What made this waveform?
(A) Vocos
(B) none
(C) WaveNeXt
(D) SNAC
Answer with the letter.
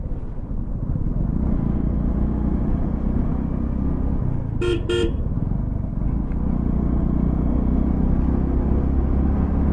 B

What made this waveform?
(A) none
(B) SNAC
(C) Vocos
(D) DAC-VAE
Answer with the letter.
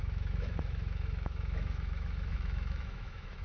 D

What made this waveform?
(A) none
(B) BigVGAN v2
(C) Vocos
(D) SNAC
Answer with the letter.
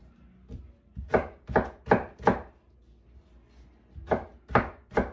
A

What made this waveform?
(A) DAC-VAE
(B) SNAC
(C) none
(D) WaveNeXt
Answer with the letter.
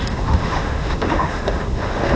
A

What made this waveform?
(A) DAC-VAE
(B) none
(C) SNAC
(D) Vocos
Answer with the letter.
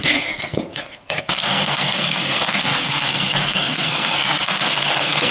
C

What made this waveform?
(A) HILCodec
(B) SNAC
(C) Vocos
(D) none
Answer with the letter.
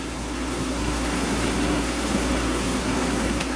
B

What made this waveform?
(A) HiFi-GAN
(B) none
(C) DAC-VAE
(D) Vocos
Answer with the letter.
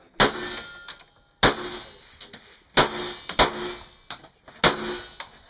B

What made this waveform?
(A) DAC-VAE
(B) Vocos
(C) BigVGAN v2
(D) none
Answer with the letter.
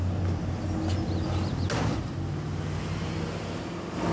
D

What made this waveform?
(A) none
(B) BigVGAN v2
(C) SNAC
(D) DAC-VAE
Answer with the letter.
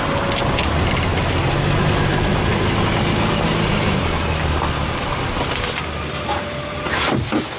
A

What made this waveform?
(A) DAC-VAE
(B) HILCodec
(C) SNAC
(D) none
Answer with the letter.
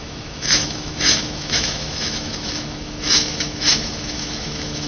A